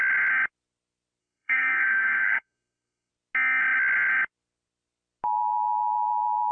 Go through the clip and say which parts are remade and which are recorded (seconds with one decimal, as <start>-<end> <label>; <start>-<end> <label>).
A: 0.0-1.2 recorded; 1.2-3.1 remade; 3.1-6.5 recorded